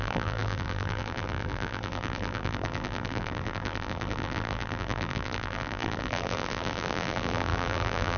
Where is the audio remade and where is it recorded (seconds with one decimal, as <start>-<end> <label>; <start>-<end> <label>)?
0.0-8.2 remade